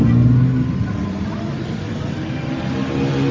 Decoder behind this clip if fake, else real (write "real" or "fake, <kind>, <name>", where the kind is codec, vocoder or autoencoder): real